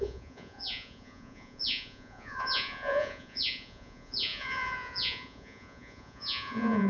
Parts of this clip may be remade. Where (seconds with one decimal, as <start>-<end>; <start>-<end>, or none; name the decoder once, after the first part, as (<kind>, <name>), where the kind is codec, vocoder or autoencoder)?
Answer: 0.0-6.9 (vocoder, Vocos)